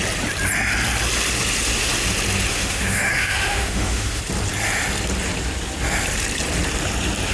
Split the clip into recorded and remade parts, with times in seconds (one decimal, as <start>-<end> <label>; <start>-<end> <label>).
0.0-2.5 recorded; 2.5-4.2 remade; 4.2-7.3 recorded